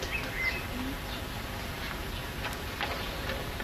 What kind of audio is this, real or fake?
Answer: real